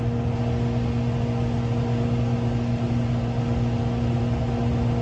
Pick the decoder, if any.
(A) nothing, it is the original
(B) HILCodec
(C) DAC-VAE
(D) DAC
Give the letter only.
A